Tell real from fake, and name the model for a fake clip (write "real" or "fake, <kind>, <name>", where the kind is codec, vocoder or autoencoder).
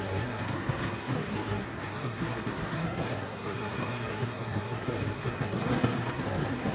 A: fake, codec, SNAC